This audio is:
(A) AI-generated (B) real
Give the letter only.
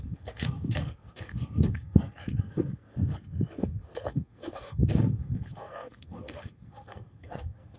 A